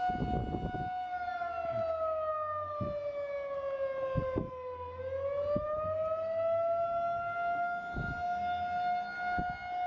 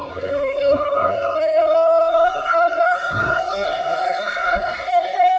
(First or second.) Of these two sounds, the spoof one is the second